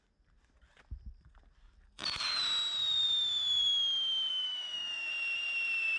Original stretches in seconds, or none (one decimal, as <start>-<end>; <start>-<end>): 0.0-4.3; 5.1-6.0